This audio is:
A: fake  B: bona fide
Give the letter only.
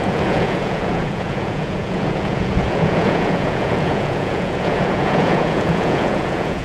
A